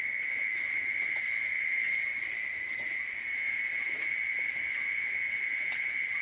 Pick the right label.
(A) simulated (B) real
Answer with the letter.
B